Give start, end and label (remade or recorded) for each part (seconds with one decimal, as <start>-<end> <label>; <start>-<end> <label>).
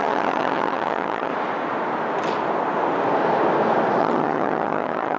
0.0-1.3 remade; 1.3-4.0 recorded; 4.0-5.2 remade